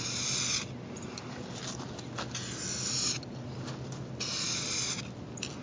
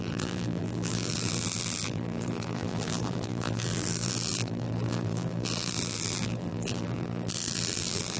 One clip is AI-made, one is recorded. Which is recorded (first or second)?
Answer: first